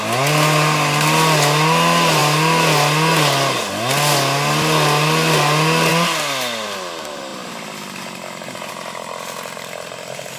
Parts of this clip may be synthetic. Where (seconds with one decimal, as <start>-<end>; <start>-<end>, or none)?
none